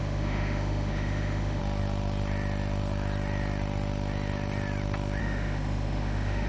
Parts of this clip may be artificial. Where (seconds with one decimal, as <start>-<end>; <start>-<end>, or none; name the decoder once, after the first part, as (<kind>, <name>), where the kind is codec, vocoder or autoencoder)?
0.0-1.6 (autoencoder, DAC-VAE); 5.2-6.5